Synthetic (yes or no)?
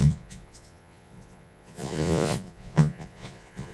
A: yes